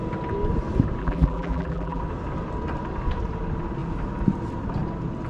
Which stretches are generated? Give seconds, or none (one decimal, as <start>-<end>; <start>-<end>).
1.0-2.0